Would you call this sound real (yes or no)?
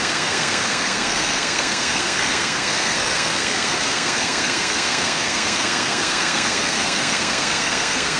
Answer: no